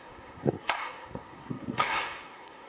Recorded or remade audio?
remade